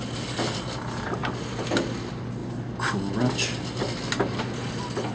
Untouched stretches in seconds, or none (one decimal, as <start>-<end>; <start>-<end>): 0.0-5.1